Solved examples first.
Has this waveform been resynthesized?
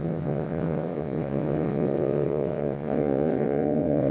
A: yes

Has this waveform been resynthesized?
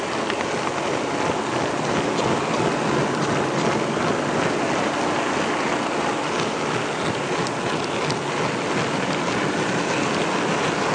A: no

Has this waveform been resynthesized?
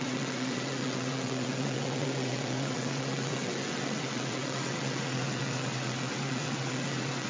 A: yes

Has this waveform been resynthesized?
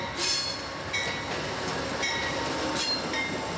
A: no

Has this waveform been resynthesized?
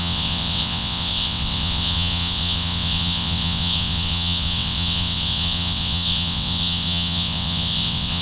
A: yes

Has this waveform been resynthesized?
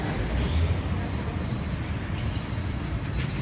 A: no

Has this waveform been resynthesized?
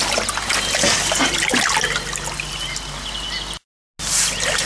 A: no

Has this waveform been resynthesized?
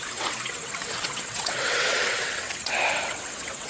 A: yes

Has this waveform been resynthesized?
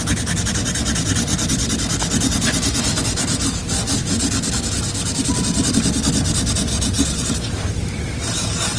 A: no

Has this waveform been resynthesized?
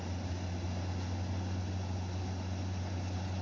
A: no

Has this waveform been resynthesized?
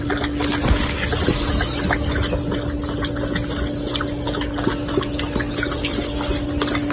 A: no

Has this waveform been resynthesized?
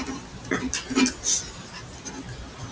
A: no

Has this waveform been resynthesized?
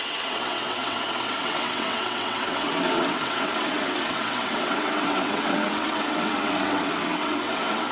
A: yes